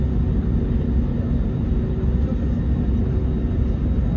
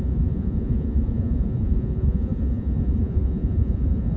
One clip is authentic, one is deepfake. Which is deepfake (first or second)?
second